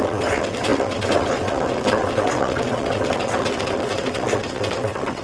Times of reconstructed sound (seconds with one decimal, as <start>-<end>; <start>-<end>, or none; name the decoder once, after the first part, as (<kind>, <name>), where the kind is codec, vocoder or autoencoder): 0.0-5.2 (vocoder, WaveNeXt)